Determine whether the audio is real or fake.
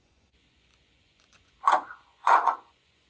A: fake